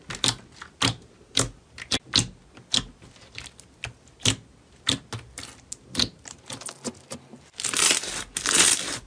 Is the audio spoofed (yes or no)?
no